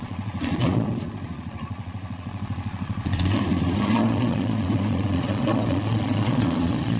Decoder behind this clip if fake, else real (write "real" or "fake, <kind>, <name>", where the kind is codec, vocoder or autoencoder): fake, vocoder, Vocos